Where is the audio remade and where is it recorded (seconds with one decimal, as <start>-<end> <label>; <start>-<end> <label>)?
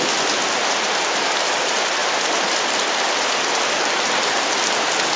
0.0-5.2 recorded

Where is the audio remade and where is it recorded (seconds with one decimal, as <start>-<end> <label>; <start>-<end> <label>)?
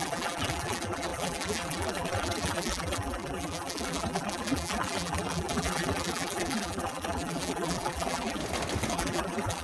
0.0-8.4 remade; 8.4-8.9 recorded; 8.9-9.6 remade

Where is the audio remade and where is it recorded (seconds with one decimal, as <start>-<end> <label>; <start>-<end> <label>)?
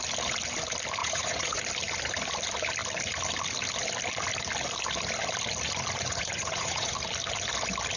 0.0-1.0 recorded; 1.0-1.6 remade; 1.6-6.1 recorded; 6.1-6.9 remade; 6.9-8.0 recorded